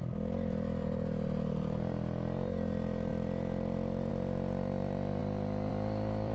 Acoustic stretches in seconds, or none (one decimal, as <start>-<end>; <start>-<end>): 5.2-5.7